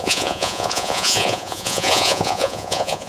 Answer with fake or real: fake